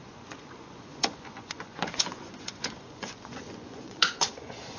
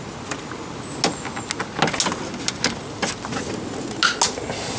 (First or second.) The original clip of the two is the second